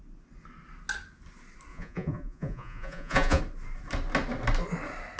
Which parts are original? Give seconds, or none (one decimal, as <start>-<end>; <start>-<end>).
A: 0.0-1.7; 3.4-5.2